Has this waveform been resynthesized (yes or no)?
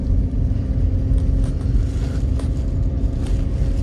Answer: no